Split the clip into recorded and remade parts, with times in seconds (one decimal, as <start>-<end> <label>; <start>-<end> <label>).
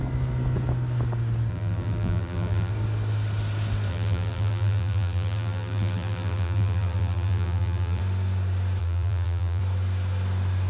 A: 0.0-1.5 recorded; 1.5-2.7 remade; 2.7-3.9 recorded; 3.9-8.0 remade; 8.0-8.8 recorded; 8.8-9.6 remade; 9.6-10.7 recorded